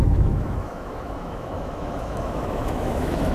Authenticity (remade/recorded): remade